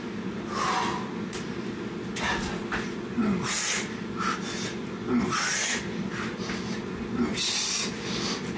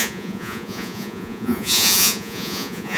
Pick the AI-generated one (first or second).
second